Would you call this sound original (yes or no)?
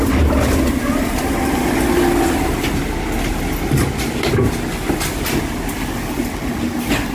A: yes